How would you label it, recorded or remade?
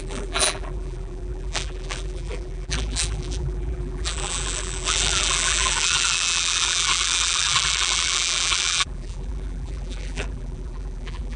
remade